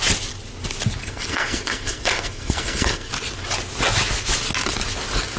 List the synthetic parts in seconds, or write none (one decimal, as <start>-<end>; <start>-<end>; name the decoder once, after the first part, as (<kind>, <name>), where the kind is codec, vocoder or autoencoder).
1.0-3.1 (codec, SNAC)